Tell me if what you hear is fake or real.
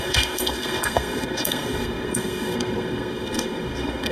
fake